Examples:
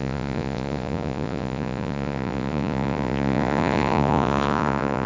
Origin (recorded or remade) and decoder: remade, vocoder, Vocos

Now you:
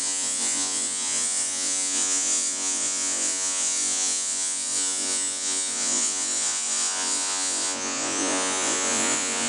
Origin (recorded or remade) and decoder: remade, vocoder, Vocos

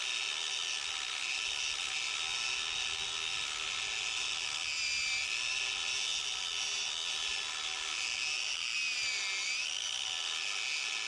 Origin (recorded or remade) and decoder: recorded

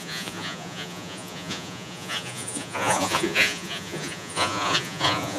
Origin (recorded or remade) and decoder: remade, vocoder, Vocos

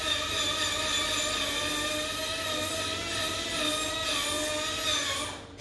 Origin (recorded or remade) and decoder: recorded